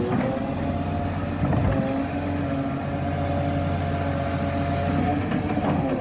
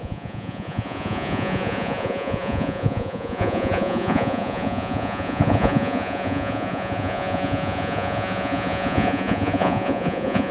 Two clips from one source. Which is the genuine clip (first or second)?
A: first